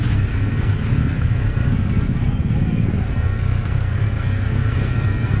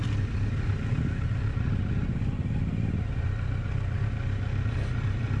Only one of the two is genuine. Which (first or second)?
second